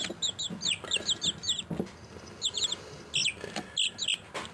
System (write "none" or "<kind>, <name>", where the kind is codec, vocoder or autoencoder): none